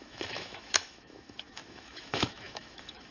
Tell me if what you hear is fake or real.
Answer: fake